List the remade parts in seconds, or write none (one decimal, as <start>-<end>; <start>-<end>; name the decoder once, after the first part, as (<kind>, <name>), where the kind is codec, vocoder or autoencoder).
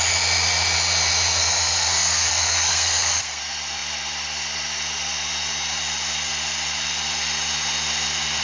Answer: 1.4-3.4 (codec, SNAC)